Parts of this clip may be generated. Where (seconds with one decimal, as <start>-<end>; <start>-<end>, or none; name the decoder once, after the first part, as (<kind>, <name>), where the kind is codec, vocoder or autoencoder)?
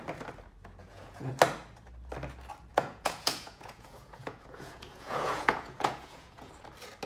0.8-1.3 (vocoder, Vocos); 2.7-6.5